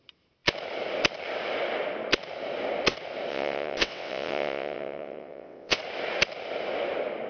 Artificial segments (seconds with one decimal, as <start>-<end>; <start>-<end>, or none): 3.3-5.8